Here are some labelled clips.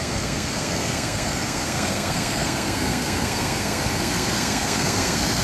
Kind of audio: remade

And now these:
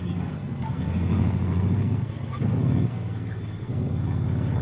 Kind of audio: remade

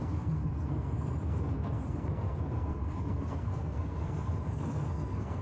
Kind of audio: remade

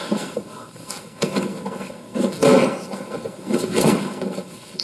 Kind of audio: remade